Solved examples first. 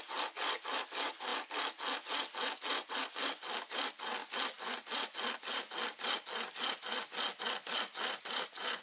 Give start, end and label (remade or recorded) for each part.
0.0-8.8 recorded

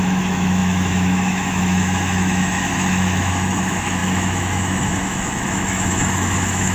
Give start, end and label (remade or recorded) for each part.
0.0-6.7 remade

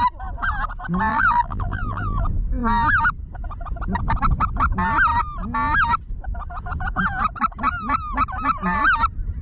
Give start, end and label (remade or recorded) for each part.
0.0-1.1 recorded; 1.1-2.2 remade; 2.2-9.4 recorded

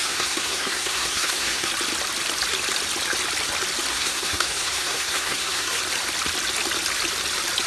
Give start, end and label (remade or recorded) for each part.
0.0-1.7 remade; 1.7-3.9 recorded; 3.9-5.8 remade; 5.8-7.7 recorded

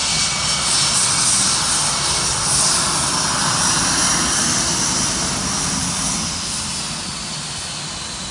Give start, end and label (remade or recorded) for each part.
0.0-8.3 recorded

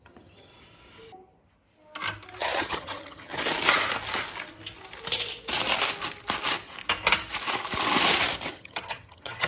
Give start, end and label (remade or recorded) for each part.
0.0-0.5 remade; 0.5-2.4 recorded; 2.4-3.3 remade; 3.3-8.5 recorded; 8.5-9.5 remade

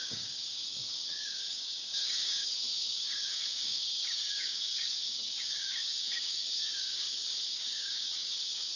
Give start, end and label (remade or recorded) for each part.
0.0-8.8 remade